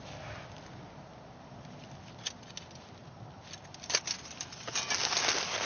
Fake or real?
real